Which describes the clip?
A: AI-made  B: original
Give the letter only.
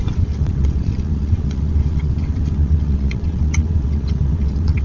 A